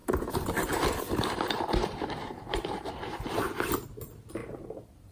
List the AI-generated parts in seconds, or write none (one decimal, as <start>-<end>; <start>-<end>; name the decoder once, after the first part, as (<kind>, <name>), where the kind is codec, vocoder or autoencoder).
0.0-2.9 (vocoder, BigVGAN v2); 4.4-5.1